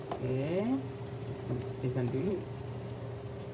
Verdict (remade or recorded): remade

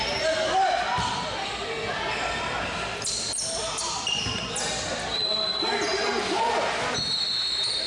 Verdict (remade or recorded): recorded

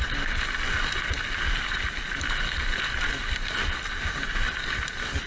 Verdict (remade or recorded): recorded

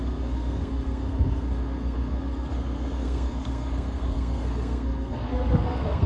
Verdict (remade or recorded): remade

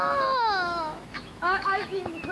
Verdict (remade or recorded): remade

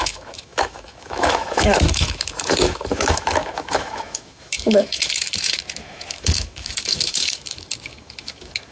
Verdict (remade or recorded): remade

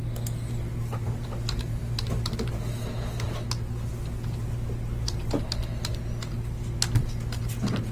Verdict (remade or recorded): recorded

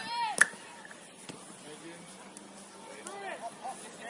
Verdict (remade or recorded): recorded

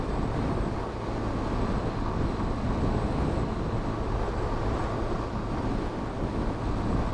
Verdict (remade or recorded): recorded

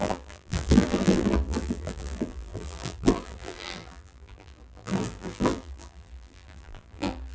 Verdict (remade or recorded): remade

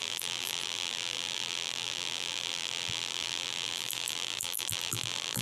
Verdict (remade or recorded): remade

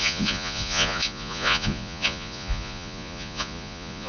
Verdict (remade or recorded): remade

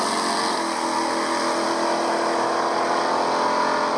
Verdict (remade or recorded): recorded